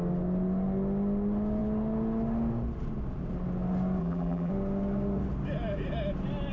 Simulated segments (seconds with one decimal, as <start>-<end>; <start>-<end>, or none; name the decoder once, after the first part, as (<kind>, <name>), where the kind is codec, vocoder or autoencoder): 4.0-4.5 (vocoder, BigVGAN v2)

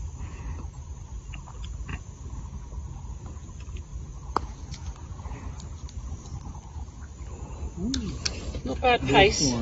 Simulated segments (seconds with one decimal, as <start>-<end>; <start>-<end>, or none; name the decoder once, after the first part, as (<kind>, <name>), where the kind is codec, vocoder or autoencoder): none

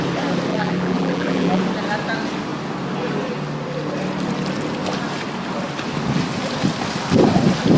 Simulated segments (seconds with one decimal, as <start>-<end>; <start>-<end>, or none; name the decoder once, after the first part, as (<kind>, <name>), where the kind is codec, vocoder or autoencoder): 0.5-1.6 (vocoder, BigVGAN v2)

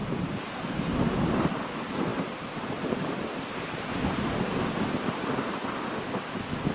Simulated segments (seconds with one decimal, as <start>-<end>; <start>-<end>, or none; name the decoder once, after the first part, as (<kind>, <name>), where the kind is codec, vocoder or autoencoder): 0.0-0.8 (vocoder, BigVGAN v2)